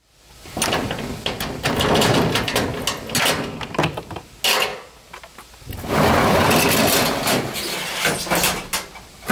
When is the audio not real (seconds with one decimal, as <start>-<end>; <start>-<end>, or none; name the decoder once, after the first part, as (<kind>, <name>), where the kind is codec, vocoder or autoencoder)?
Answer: none